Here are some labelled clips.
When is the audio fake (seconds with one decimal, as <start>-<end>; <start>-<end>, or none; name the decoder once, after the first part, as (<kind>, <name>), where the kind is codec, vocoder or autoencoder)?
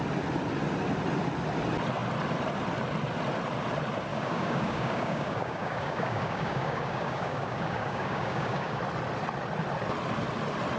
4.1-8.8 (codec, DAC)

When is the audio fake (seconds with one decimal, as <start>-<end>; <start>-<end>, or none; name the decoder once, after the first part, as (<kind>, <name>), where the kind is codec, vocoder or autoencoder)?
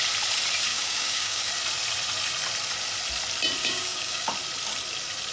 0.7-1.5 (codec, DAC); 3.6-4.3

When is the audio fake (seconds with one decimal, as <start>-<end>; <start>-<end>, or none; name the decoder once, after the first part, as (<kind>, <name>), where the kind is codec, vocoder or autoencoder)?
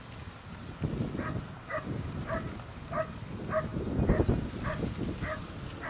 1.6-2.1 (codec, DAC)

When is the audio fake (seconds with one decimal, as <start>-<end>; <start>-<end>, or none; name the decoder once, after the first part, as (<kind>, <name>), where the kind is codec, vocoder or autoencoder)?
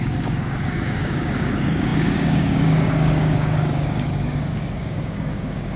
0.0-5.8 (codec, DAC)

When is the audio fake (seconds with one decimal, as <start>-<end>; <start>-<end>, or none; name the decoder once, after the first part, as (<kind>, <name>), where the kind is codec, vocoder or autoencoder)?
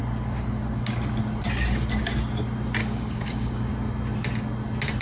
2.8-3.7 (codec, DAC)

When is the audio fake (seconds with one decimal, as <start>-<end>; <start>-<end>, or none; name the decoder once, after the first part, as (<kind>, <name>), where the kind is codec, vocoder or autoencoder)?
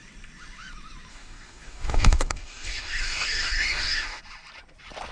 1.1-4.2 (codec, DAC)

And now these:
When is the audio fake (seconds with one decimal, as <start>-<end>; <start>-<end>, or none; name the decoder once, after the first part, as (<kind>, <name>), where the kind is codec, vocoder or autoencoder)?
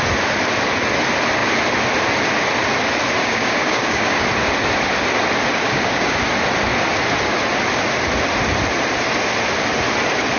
3.2-4.2 (codec, DAC); 5.5-6.2